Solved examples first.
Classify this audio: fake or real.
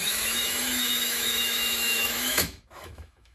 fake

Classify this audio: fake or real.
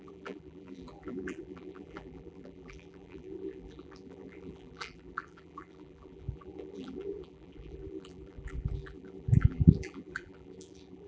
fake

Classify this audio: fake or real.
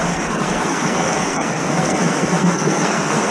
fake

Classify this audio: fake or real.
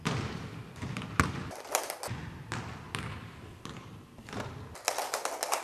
real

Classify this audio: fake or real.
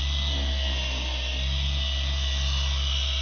real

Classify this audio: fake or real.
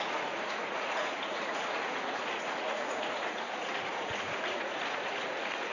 fake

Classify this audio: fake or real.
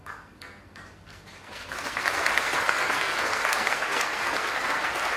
fake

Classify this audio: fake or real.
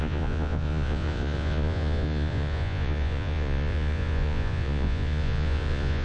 fake